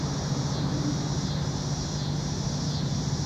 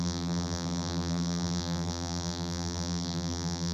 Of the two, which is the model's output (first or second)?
second